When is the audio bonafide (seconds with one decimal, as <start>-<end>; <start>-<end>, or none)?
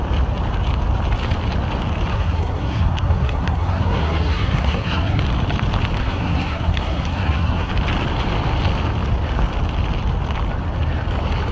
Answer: 0.0-2.1; 5.2-6.0; 7.7-11.5